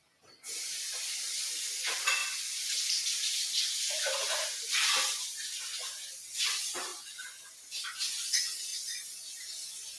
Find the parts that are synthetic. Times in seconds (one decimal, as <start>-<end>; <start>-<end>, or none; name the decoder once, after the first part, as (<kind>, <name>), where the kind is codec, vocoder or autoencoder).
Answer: 2.2-4.5 (vocoder, BigVGAN v2)

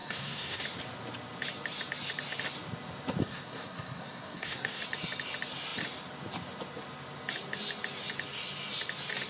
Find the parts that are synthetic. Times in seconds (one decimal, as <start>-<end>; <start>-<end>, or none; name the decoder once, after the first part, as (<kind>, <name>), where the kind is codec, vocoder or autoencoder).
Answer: 0.0-0.6 (codec, SNAC); 3.2-4.8

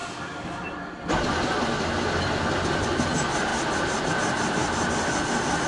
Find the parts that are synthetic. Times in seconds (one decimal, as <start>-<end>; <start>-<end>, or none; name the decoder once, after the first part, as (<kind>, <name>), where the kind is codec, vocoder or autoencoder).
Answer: none

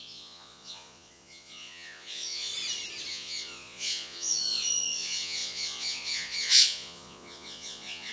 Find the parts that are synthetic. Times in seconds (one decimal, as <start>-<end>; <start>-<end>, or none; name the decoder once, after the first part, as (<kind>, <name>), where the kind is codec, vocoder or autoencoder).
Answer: 0.0-2.5 (vocoder, Vocos); 3.1-8.1

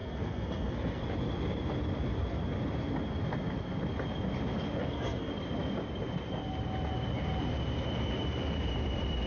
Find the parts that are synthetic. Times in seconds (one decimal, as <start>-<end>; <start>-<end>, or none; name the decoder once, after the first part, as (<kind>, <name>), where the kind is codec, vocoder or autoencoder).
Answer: 0.0-1.0 (codec, SNAC); 4.8-5.3

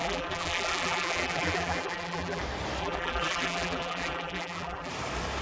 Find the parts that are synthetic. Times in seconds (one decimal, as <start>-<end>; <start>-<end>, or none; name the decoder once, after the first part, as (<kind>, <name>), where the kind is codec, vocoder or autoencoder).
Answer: 0.0-2.4 (vocoder, BigVGAN v2); 2.8-4.9

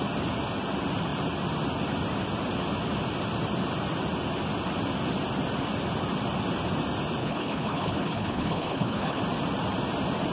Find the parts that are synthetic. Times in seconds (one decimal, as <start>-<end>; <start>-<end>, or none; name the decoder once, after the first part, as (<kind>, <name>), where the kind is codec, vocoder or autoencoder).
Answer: 7.2-9.2 (codec, HILCodec)

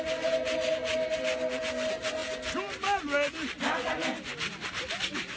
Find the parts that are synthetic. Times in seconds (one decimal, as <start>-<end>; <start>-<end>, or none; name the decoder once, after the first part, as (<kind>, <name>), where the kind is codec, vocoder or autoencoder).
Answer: none